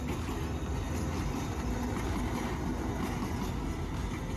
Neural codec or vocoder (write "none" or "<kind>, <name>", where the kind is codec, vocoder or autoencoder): none